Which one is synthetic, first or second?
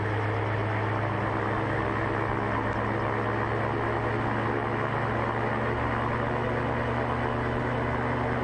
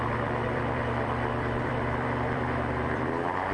second